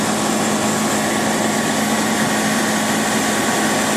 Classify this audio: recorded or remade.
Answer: recorded